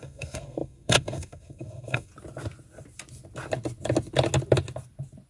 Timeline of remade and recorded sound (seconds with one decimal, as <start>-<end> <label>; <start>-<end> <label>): 0.0-2.1 remade; 2.1-5.3 recorded